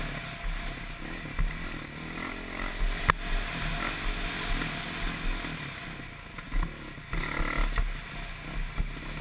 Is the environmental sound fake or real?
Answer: real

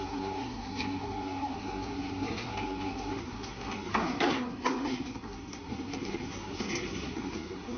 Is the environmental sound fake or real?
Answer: fake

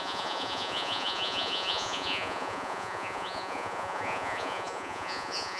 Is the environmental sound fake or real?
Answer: fake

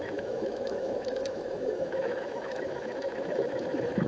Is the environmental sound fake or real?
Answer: fake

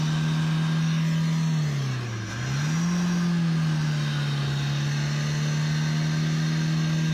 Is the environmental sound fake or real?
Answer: real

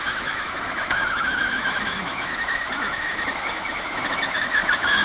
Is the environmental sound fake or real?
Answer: fake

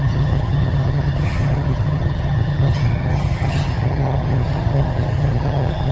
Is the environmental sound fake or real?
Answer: fake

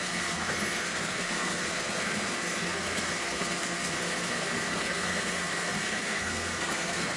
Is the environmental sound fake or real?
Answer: fake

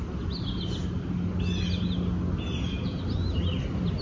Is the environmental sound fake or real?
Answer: real